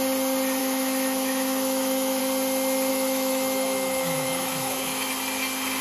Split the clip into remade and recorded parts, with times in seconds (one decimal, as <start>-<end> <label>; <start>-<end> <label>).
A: 0.0-0.6 recorded; 0.6-2.2 remade; 2.2-2.9 recorded; 2.9-5.1 remade; 5.1-5.8 recorded